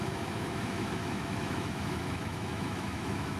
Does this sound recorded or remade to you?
remade